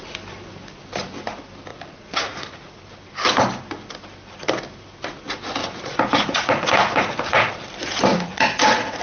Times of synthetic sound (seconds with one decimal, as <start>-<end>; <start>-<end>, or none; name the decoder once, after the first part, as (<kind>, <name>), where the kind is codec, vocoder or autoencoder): 1.7-2.8 (vocoder, Vocos); 5.6-7.5; 8.1-9.0